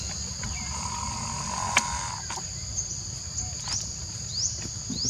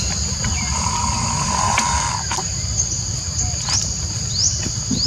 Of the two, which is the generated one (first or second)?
second